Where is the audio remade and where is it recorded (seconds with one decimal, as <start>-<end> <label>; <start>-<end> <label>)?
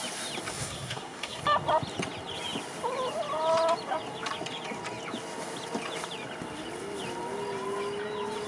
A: 0.0-0.5 recorded; 0.5-1.4 remade; 1.4-8.5 recorded